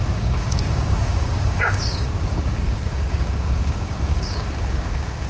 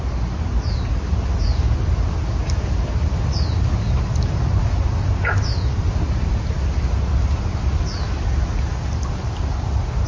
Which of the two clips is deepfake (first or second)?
first